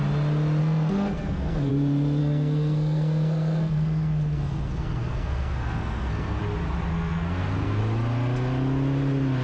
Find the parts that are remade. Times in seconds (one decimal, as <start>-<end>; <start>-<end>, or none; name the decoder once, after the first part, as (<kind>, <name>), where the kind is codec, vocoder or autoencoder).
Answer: 0.6-1.7 (codec, SNAC); 2.2-6.4; 6.9-7.8